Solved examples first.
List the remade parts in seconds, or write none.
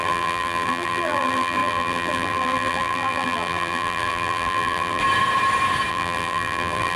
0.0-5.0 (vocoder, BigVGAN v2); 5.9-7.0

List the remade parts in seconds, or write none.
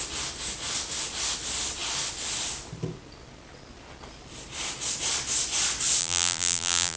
6.0-7.0 (vocoder, BigVGAN v2)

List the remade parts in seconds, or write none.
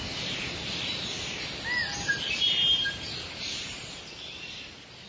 1.9-3.9 (vocoder, BigVGAN v2)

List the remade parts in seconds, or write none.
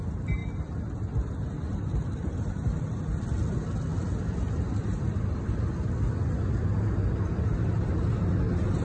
0.4-2.8 (vocoder, BigVGAN v2)